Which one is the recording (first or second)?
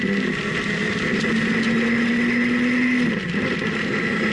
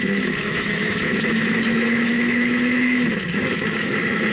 first